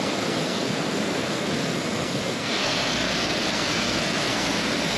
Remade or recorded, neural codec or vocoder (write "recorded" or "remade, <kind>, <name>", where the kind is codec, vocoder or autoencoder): remade, codec, SNAC